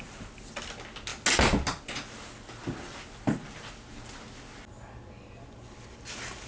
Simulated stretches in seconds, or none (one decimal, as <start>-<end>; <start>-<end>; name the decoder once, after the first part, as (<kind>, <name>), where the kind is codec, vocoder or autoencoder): none